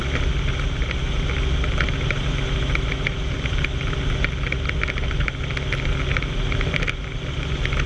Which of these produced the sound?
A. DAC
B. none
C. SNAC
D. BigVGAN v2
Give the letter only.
B